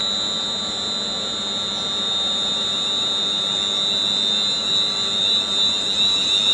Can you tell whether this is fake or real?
real